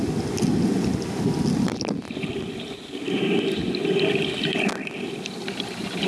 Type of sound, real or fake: real